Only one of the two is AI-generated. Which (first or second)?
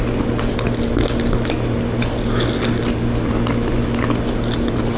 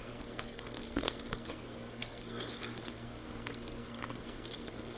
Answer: second